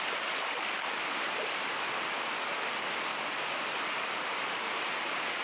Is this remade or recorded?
recorded